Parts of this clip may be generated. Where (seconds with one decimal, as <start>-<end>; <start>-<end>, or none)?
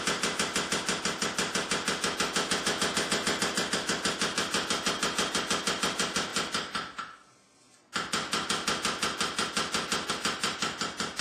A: none